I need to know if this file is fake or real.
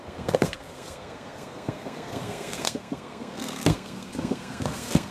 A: fake